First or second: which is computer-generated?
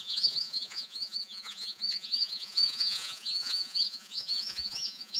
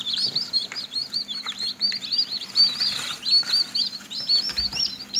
first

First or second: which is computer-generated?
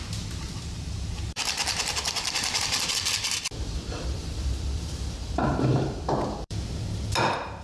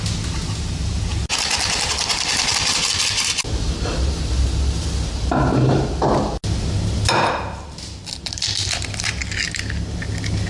first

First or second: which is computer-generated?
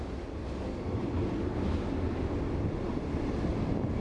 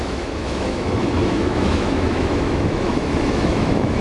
second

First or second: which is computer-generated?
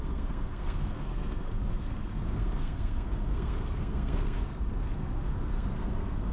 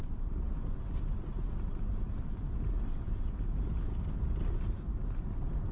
first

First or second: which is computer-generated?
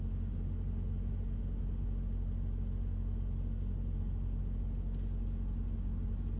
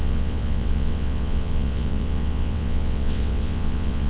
second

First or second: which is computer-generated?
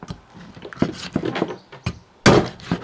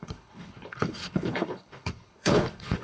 second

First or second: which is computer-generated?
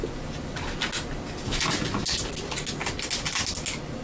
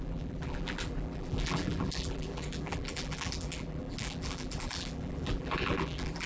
second